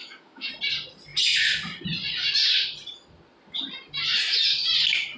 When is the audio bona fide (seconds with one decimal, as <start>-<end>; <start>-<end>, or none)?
0.5-5.2